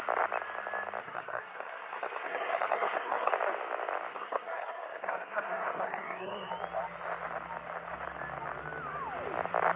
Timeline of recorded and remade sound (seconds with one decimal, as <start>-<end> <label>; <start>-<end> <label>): 0.0-1.0 recorded; 1.0-3.3 remade; 3.3-4.1 recorded; 4.1-6.5 remade; 6.5-9.8 recorded